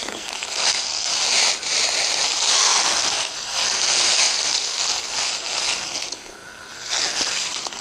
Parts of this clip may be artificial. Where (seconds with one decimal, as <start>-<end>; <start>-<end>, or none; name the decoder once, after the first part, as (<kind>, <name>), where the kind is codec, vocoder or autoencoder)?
0.0-1.1 (codec, SNAC); 2.2-7.8